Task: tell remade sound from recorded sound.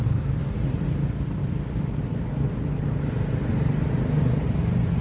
recorded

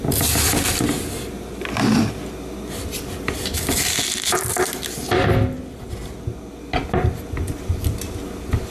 recorded